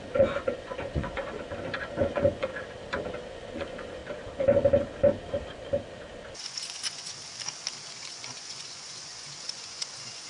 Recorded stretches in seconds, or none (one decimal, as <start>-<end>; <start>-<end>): 1.2-2.0; 2.5-3.3; 4.0-6.3; 7.2-7.9